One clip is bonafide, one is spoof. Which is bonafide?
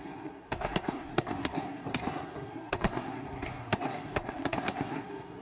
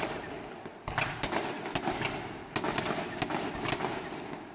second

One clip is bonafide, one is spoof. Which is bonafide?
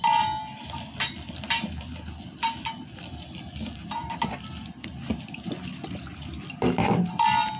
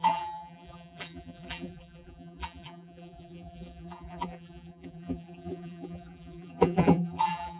first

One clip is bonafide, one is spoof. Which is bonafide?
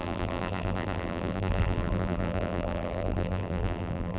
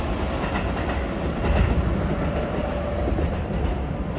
second